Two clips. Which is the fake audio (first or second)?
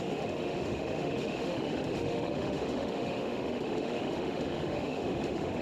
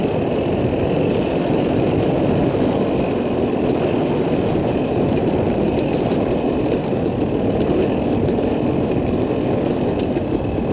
first